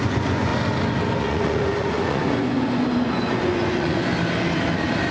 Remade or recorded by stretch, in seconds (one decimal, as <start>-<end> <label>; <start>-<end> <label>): 0.0-0.5 remade; 0.5-1.2 recorded; 1.2-4.1 remade; 4.1-5.1 recorded